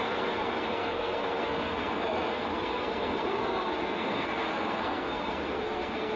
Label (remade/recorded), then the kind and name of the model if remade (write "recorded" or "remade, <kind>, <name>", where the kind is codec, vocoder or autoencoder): remade, codec, SNAC